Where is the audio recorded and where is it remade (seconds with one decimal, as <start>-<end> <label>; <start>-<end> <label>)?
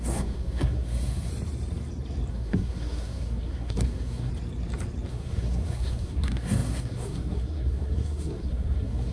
0.0-1.3 remade; 1.3-2.3 recorded; 2.3-4.3 remade; 4.3-5.1 recorded; 5.1-9.1 remade